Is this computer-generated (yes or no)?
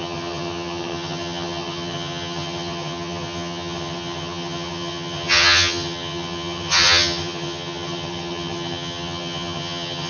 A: yes